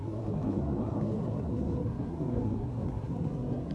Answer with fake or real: fake